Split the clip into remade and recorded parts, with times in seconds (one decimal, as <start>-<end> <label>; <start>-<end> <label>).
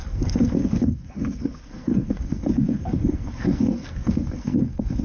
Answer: 0.0-5.0 remade